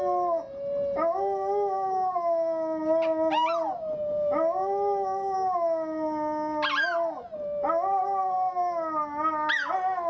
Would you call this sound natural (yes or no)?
yes